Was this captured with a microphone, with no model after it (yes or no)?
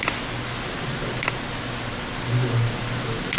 yes